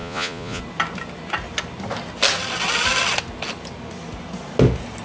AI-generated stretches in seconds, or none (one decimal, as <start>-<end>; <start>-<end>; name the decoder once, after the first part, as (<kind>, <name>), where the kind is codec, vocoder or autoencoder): 0.0-0.6 (vocoder, Vocos)